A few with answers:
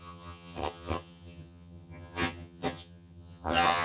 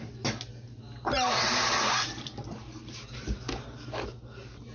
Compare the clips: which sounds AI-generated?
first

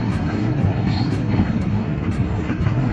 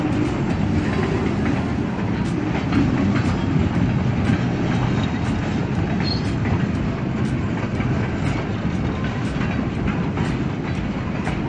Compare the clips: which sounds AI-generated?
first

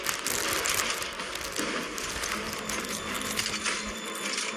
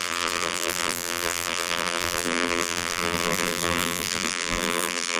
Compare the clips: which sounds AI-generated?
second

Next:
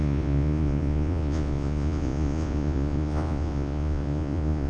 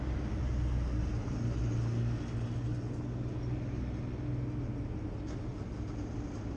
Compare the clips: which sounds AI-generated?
first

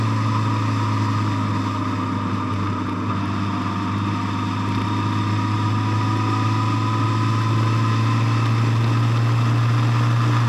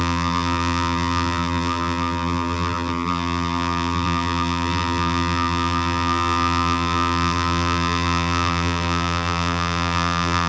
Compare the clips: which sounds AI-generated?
second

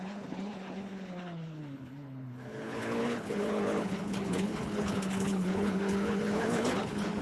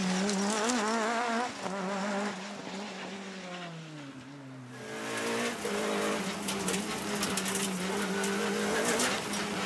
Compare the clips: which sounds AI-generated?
first